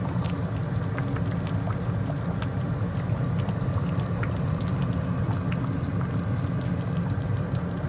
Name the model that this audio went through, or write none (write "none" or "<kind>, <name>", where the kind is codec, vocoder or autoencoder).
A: none